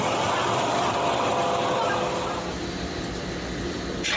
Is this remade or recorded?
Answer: recorded